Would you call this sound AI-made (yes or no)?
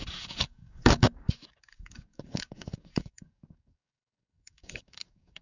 yes